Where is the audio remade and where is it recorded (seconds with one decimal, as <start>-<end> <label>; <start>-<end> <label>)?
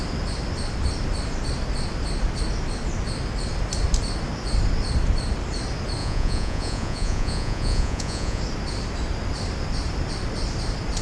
0.0-6.0 recorded; 6.0-8.4 remade; 8.4-11.0 recorded